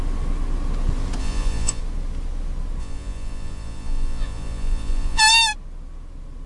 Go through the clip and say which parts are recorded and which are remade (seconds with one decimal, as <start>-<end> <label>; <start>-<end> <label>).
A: 0.0-1.2 recorded; 1.2-1.8 remade; 1.8-2.8 recorded; 2.8-5.2 remade; 5.2-6.5 recorded